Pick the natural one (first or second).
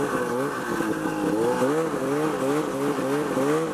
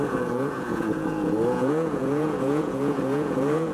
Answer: first